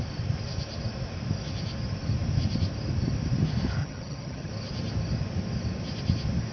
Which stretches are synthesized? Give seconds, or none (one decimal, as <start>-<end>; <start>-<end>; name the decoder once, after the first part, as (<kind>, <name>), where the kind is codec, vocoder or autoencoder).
3.8-4.5 (vocoder, HiFi-GAN)